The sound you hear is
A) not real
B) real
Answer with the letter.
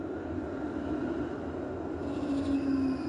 B